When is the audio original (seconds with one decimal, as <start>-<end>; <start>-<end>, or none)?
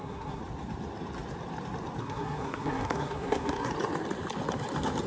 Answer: 0.4-2.0; 3.7-5.1